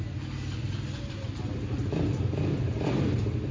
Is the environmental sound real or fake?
real